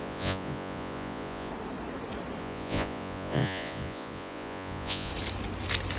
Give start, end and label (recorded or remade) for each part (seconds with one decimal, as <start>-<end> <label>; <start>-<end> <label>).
0.0-1.5 remade; 1.5-2.4 recorded; 2.4-5.1 remade; 5.1-6.0 recorded